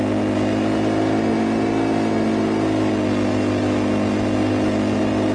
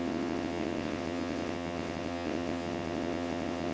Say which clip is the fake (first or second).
second